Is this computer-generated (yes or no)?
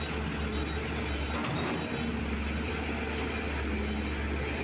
no